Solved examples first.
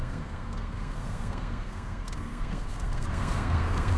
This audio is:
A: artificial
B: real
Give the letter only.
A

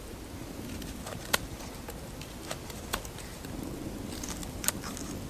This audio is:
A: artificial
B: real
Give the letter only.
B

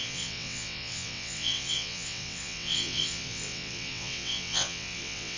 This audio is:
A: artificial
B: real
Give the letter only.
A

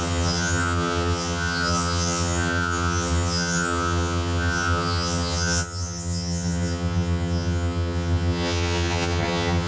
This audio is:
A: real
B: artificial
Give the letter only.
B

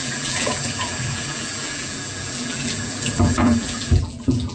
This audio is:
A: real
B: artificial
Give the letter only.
B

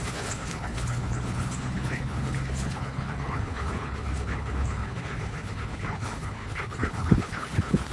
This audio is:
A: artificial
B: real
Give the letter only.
A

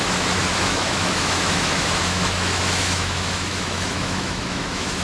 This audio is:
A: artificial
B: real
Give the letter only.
A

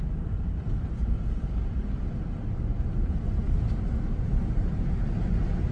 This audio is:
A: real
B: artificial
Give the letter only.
A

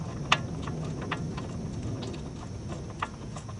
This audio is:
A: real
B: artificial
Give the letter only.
A